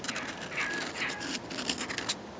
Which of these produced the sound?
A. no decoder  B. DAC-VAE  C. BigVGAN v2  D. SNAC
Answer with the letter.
A